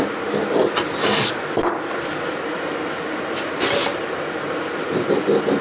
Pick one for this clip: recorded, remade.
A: recorded